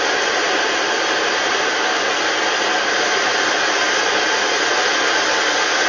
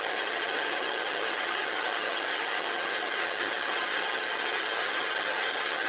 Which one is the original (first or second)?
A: first